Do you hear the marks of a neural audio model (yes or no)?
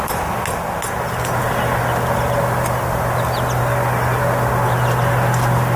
no